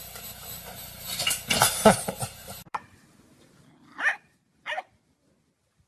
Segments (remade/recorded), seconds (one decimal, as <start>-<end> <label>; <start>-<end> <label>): 0.0-3.5 remade; 3.5-5.9 recorded